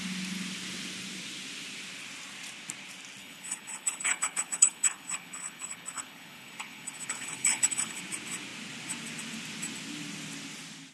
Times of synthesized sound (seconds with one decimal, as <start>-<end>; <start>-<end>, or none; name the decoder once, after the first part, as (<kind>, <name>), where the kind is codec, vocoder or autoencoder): 3.2-8.0 (codec, HILCodec)